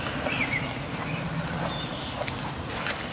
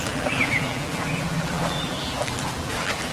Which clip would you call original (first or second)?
first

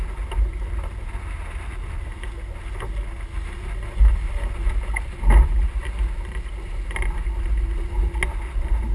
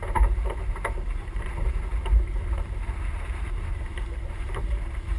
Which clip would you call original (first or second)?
first